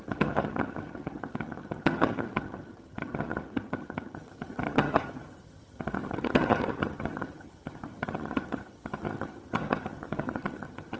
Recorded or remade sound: remade